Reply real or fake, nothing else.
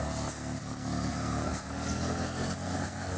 fake